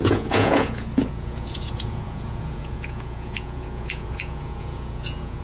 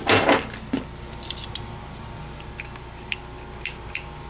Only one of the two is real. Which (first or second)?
second